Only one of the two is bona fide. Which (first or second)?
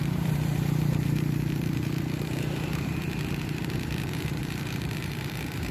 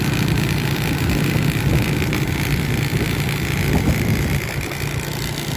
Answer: second